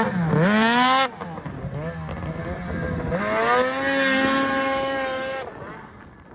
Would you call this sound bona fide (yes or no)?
yes